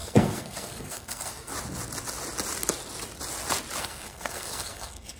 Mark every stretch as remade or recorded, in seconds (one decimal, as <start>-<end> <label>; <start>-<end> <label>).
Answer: 0.0-1.5 remade; 1.5-3.8 recorded; 3.8-5.2 remade